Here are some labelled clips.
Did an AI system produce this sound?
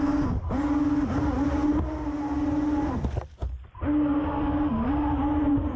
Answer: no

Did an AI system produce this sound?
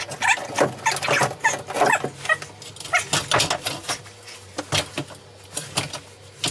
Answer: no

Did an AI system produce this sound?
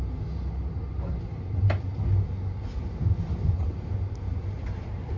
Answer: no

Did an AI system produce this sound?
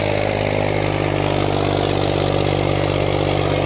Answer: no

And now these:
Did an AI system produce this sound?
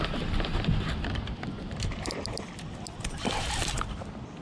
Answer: no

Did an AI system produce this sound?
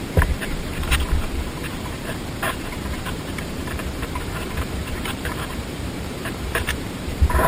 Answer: yes